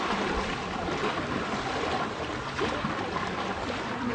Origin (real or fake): real